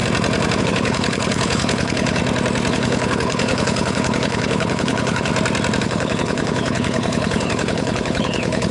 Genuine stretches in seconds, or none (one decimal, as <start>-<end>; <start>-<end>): 0.0-0.6; 2.2-2.7; 5.3-5.8